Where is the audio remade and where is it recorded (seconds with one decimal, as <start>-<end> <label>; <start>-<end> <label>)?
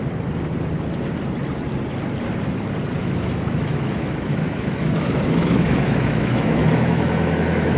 0.0-3.0 recorded; 3.0-7.8 remade